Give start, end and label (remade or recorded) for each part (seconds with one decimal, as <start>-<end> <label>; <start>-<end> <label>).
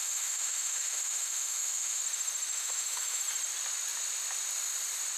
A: 0.0-2.0 remade; 2.0-2.5 recorded; 2.5-3.2 remade; 3.2-5.2 recorded